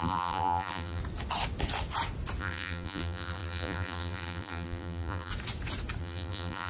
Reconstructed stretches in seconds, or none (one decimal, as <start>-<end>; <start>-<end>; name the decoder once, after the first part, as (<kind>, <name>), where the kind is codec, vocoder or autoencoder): 0.0-1.0 (vocoder, BigVGAN v2); 2.4-5.3; 6.0-6.7

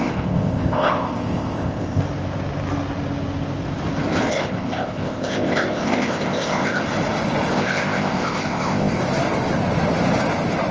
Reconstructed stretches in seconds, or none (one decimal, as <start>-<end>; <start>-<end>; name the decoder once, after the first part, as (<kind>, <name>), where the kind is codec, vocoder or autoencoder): 0.0-2.0 (codec, ZipCodec); 4.3-6.8; 7.5-9.0

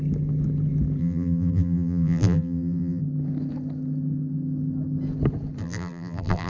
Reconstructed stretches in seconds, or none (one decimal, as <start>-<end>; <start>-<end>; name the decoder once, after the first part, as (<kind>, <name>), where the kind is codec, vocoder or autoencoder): 1.0-3.0 (vocoder, BigVGAN v2); 5.6-6.5

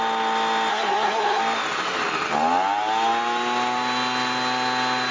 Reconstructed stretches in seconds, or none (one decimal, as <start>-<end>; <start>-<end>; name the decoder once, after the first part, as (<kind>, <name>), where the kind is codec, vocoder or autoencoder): 0.7-1.4 (codec, SNAC)

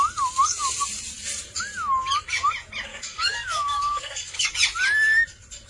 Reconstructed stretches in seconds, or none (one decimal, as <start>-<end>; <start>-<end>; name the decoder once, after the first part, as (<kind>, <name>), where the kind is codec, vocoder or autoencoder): 2.9-4.5 (codec, DAC)

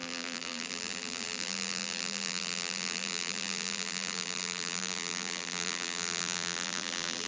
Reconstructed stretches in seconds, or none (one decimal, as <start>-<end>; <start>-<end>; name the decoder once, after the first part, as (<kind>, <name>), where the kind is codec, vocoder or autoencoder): 0.0-7.3 (vocoder, BigVGAN v2)

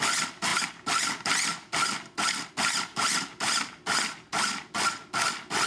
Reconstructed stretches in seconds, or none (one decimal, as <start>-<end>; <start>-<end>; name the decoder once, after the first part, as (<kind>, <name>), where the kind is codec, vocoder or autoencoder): none

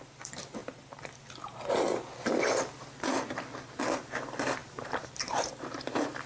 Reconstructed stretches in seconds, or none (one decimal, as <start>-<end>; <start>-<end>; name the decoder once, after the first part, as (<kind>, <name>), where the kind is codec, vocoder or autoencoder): 0.0-0.6 (vocoder, BigVGAN v2); 4.0-6.3